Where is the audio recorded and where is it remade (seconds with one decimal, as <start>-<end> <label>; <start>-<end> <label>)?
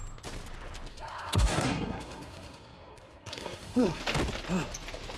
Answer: 0.0-0.9 recorded; 0.9-4.0 remade; 4.0-5.2 recorded